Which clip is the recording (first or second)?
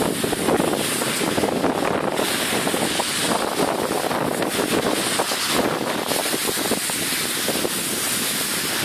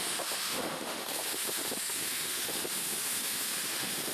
first